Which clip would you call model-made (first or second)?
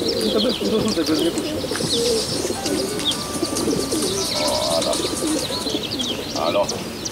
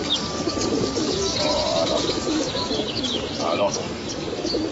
second